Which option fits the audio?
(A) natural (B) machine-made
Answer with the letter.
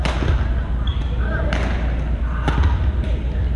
A